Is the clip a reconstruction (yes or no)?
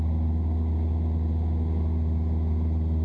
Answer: no